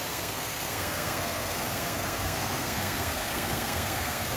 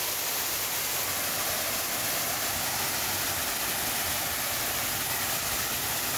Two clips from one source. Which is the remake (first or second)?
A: first